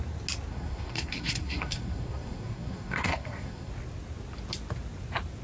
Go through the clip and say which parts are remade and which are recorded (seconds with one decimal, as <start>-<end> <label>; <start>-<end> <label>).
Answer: 0.0-0.5 recorded; 0.5-3.7 remade; 3.7-5.4 recorded